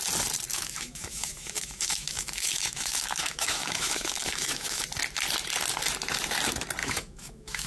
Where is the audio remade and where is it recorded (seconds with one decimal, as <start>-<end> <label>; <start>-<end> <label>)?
0.0-0.5 recorded; 0.5-4.8 remade; 4.8-6.8 recorded; 6.8-7.7 remade